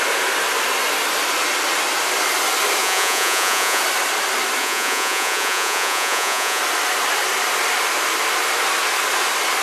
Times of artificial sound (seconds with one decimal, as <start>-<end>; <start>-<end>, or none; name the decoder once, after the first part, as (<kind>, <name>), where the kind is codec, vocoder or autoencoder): 2.8-3.8 (vocoder, Vocos); 4.6-6.6